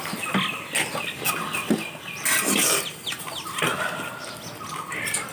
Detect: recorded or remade recorded